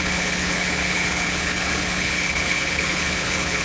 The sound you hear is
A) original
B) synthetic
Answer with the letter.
B